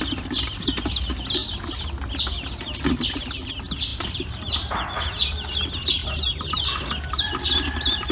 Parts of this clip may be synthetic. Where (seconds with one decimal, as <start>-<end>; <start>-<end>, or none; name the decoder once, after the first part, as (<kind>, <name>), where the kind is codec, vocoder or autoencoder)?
3.9-5.0 (vocoder, BigVGAN v2)

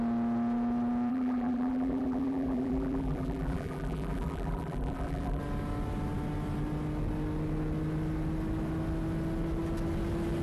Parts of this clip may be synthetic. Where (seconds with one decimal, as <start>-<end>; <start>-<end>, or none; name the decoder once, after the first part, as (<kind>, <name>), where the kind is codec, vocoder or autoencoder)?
1.1-5.4 (vocoder, BigVGAN v2)

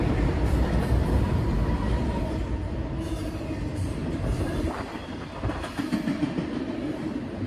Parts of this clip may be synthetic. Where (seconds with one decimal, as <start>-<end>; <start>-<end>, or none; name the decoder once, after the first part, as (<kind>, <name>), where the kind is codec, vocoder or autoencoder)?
0.0-7.5 (vocoder, BigVGAN v2)

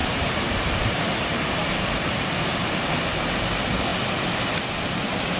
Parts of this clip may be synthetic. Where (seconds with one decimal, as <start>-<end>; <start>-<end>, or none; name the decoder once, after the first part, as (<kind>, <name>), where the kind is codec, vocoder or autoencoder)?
0.0-3.2 (vocoder, BigVGAN v2)

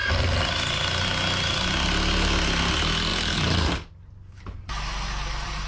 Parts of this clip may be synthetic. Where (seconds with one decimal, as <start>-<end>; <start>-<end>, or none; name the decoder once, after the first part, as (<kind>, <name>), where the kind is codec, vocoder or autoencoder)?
3.1-5.7 (vocoder, BigVGAN v2)

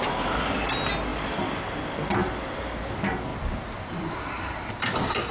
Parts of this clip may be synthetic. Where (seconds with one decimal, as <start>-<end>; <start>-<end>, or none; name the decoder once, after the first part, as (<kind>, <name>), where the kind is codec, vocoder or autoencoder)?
2.2-2.8 (vocoder, BigVGAN v2); 3.3-4.7

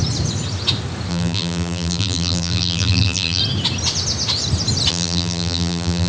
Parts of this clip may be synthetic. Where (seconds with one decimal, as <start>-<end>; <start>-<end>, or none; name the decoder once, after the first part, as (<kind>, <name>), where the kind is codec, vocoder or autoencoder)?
1.1-3.4 (vocoder, BigVGAN v2); 4.9-6.1